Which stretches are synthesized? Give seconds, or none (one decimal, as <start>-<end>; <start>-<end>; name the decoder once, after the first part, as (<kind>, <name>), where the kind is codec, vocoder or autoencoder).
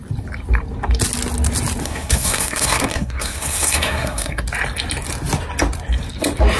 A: 1.8-4.4 (codec, SNAC)